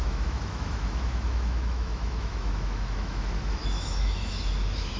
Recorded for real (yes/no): no